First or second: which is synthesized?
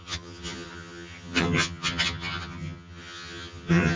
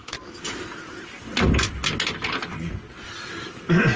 first